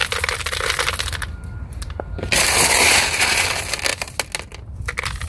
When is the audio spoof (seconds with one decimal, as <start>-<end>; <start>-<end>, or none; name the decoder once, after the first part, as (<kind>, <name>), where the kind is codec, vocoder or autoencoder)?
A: 0.0-3.2 (vocoder, BigVGAN v2)